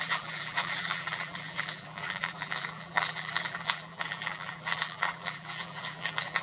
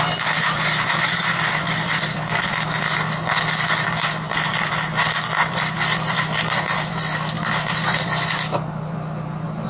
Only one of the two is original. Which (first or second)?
second